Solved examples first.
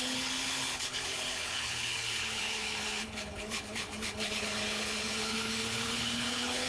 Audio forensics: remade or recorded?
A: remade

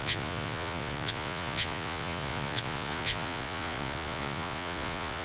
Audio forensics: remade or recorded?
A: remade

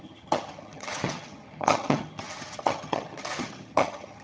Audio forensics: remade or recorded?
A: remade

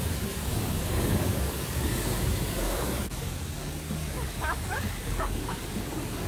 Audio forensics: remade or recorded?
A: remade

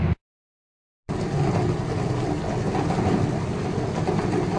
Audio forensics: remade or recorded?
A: recorded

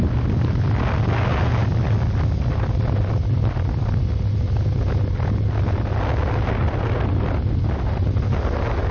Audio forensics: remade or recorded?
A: recorded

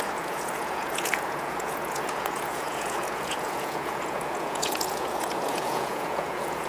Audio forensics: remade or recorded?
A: remade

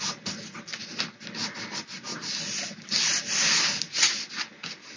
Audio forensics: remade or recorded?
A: recorded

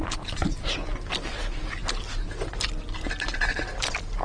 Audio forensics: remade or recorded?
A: recorded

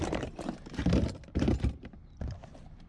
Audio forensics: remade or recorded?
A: remade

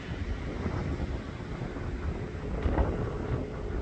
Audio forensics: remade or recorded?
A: recorded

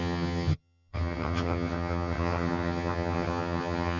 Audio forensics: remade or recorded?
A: remade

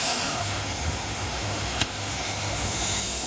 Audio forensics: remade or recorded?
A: remade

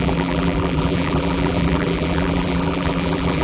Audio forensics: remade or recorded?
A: remade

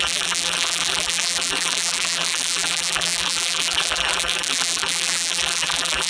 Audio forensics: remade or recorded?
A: remade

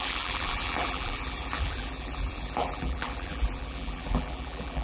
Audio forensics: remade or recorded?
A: remade